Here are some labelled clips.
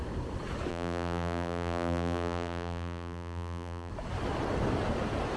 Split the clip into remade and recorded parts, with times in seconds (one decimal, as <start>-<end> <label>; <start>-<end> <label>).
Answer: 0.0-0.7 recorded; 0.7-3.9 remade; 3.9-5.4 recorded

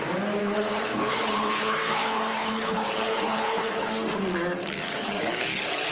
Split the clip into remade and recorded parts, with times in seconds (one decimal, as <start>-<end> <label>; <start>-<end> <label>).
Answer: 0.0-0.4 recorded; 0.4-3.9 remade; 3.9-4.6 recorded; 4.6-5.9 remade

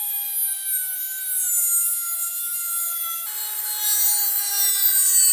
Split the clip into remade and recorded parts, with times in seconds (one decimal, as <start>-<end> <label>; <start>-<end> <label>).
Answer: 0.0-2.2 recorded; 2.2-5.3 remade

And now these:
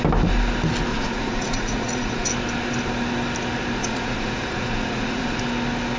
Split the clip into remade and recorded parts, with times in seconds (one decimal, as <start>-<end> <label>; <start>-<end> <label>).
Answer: 0.0-0.9 recorded; 0.9-2.3 remade; 2.3-3.8 recorded; 3.8-5.4 remade; 5.4-6.0 recorded